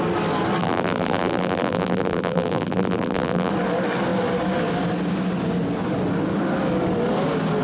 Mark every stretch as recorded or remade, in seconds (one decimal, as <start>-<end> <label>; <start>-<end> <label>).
0.0-0.6 recorded; 0.6-3.5 remade; 3.5-7.6 recorded